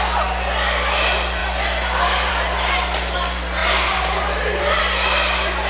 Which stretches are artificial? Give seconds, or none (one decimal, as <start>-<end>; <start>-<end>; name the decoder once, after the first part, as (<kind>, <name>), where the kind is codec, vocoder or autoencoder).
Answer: 3.6-4.8 (vocoder, BigVGAN v2)